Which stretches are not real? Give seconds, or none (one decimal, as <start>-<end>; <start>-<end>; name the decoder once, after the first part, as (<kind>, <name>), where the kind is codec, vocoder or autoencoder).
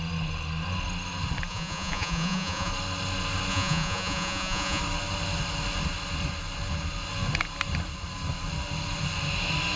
1.5-2.7 (vocoder, Vocos); 3.5-4.8